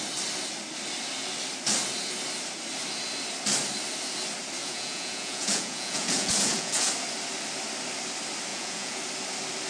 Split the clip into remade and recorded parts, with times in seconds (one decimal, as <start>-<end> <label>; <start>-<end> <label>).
0.0-4.6 recorded; 4.6-6.9 remade; 6.9-8.5 recorded; 8.5-9.0 remade; 9.0-9.7 recorded